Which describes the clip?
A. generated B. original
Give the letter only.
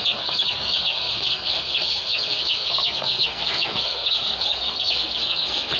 A